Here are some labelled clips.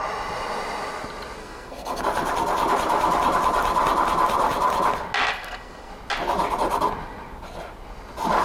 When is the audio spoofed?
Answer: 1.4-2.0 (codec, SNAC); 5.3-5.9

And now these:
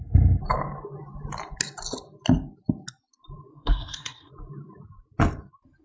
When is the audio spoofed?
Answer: 3.5-4.3 (codec, SNAC)

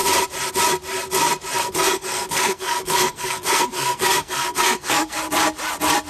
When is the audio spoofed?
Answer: 1.6-5.2 (codec, SNAC)

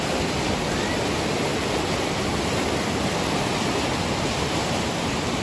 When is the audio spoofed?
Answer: none

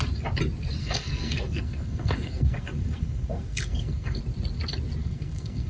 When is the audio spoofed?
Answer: 0.8-4.2 (codec, SNAC); 5.0-5.7

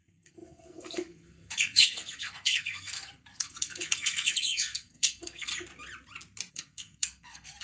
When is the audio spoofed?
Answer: 0.0-5.5 (codec, SNAC); 6.5-7.6

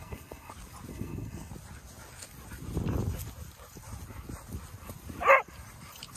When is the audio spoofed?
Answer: 0.0-0.5 (codec, SNAC); 0.9-1.5

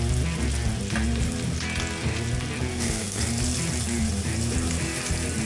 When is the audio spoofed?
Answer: 2.7-3.3 (codec, SNAC)